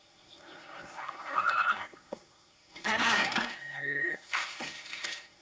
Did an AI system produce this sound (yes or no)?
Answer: yes